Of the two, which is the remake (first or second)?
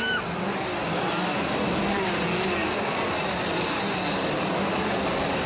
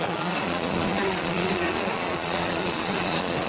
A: second